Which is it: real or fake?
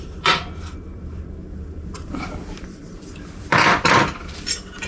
fake